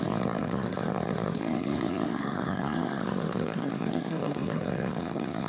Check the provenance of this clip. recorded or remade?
remade